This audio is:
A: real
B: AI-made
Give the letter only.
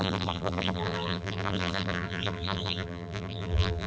B